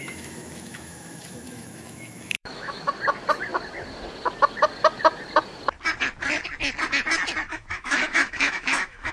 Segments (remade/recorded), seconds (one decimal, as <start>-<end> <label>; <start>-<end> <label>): 0.0-2.9 remade; 2.9-7.5 recorded; 7.5-9.1 remade